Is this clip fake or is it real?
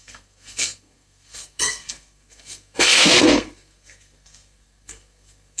fake